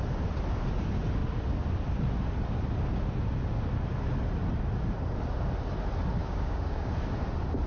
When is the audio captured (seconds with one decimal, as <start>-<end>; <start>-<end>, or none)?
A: 0.0-6.2; 6.9-7.7